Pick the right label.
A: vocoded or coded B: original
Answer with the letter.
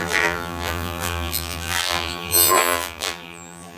A